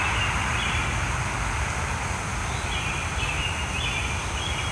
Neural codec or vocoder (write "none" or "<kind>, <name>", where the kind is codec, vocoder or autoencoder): none